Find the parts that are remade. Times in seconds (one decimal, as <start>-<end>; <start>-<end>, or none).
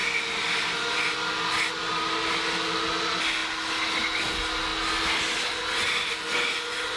none